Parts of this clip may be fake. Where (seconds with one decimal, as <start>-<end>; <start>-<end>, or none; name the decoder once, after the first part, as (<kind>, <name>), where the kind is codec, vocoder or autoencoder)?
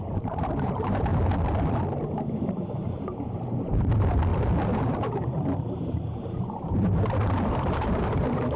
0.0-1.1 (vocoder, BigVGAN v2); 2.3-8.6